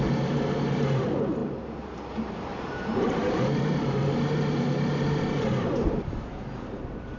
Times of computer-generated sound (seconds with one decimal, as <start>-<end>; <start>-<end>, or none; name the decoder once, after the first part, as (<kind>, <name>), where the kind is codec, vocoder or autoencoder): 0.0-7.2 (vocoder, BigVGAN v2)